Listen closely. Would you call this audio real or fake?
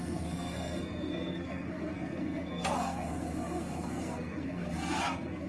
fake